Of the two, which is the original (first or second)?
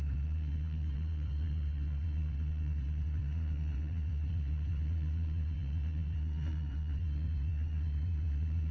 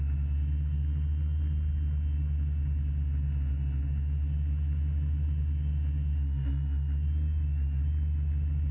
second